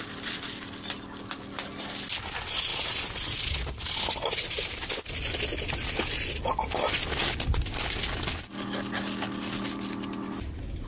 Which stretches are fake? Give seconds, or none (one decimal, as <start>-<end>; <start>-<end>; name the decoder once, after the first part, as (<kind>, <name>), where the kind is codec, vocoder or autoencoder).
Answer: none